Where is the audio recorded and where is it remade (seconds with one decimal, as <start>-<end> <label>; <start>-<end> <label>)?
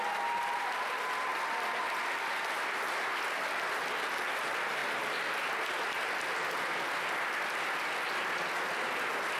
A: 0.0-9.4 recorded